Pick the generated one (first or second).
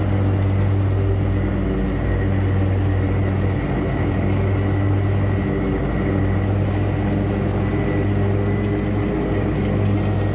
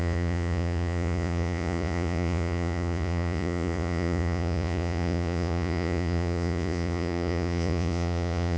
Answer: second